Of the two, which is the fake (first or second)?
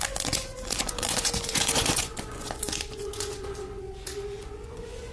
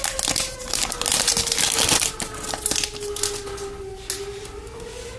first